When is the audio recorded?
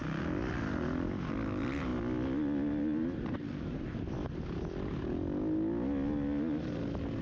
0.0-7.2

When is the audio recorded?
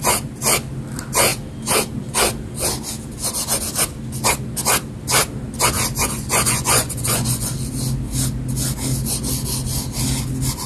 0.0-6.0; 7.5-10.7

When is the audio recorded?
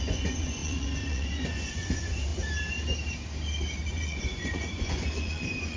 2.3-3.8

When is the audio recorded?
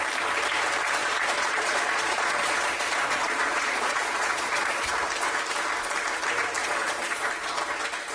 0.0-1.0; 4.9-6.6; 7.3-8.1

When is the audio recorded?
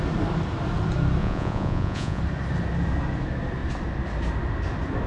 0.0-1.2; 2.2-5.1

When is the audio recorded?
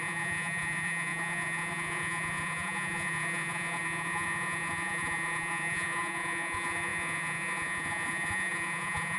none